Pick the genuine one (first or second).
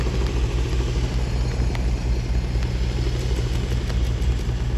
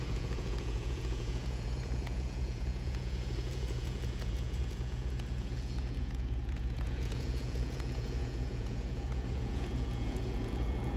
first